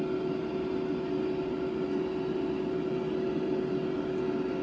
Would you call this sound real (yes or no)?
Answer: yes